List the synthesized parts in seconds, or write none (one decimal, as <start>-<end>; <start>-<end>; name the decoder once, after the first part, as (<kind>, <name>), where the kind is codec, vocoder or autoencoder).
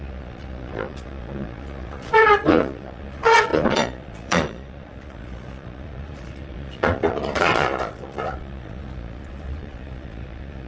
0.0-10.7 (vocoder, Vocos)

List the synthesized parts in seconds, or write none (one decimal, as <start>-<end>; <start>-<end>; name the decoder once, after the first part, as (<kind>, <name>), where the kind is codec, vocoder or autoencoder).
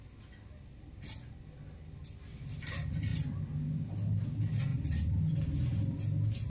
none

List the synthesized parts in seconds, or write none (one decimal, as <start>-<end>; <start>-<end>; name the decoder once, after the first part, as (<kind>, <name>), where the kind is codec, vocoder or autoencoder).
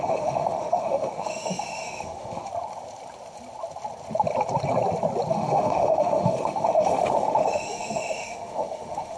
0.0-2.5 (autoencoder, DAC-VAE); 5.3-9.2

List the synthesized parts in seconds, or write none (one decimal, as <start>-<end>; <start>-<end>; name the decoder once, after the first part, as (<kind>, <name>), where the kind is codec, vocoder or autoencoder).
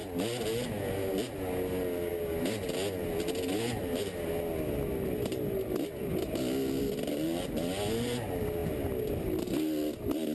none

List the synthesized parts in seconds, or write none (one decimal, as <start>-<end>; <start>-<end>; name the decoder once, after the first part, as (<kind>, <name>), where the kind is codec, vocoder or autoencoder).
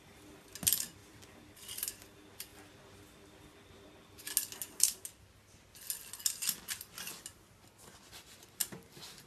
1.0-1.9 (vocoder, BigVGAN v2); 2.5-4.2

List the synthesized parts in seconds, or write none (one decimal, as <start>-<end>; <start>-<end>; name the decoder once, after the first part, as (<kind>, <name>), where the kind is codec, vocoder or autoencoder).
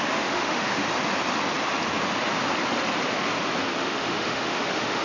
0.0-0.8 (autoencoder, DAC-VAE); 3.8-5.0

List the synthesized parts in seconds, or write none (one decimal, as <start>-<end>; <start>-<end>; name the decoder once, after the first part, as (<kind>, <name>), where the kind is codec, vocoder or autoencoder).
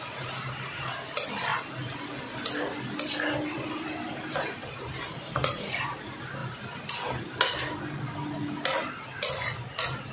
none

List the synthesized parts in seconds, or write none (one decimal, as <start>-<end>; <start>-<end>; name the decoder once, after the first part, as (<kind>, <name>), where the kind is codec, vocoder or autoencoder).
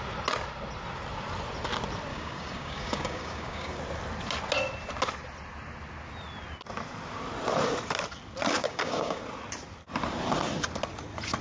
2.1-3.8 (codec, DAC); 8.6-9.2